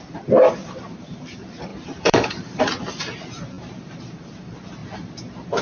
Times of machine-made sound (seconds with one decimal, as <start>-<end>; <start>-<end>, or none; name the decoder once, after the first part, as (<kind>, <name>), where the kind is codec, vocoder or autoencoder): 0.0-5.6 (vocoder, BigVGAN v2)